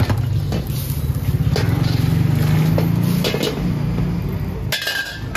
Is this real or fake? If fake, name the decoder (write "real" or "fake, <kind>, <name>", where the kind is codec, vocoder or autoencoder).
real